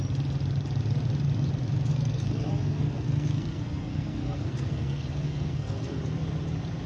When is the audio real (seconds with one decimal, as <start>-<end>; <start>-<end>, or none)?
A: 0.0-1.9; 6.0-6.9